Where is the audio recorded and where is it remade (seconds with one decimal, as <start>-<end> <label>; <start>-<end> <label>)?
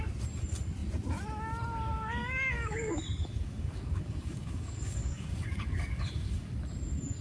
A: 0.0-2.2 recorded; 2.2-6.5 remade; 6.5-7.2 recorded